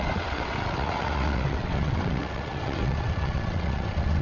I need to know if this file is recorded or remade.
remade